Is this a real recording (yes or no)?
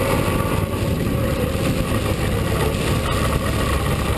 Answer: yes